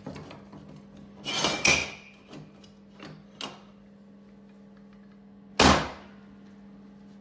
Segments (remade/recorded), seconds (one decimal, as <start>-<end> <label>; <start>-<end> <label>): 0.0-7.2 recorded